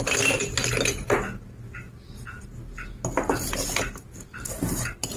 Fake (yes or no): no